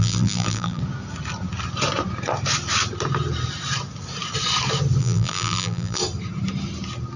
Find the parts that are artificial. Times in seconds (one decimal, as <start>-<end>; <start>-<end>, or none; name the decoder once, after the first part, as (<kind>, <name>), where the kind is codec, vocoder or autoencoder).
0.0-0.8 (vocoder, BigVGAN v2); 5.0-6.0